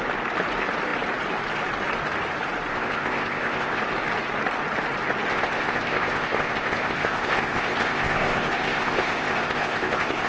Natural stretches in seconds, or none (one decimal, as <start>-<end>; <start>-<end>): 0.0-2.7; 3.8-5.3